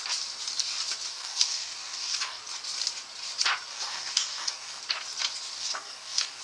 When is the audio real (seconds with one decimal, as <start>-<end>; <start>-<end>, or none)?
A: 0.0-1.1; 2.4-3.7; 4.8-5.5